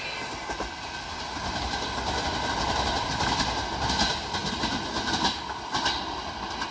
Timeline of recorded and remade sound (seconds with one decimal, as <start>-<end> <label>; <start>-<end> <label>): 0.0-6.7 recorded